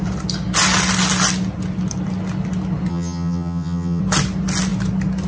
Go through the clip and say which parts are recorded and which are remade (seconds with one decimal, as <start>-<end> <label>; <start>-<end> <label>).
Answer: 0.0-2.9 recorded; 2.9-4.0 remade; 4.0-5.3 recorded

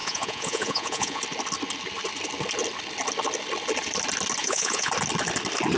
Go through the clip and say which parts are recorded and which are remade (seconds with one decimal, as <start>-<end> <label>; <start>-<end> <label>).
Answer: 0.0-1.2 remade; 1.2-4.4 recorded; 4.4-4.9 remade; 4.9-5.8 recorded

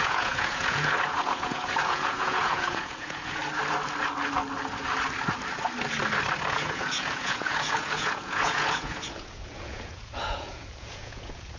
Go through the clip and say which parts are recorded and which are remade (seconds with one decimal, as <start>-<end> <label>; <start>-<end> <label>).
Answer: 0.0-3.4 remade; 3.4-6.5 recorded; 6.5-11.6 remade

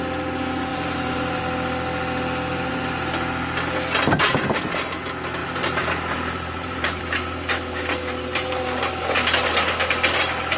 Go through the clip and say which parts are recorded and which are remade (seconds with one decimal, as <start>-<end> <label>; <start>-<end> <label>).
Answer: 0.0-0.7 recorded; 0.7-1.4 remade; 1.4-2.5 recorded; 2.5-3.1 remade; 3.1-5.4 recorded; 5.4-7.0 remade; 7.0-10.6 recorded

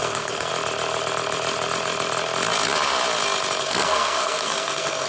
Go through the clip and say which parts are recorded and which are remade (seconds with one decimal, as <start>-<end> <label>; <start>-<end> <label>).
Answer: 0.0-0.5 remade; 0.5-3.6 recorded; 3.6-5.1 remade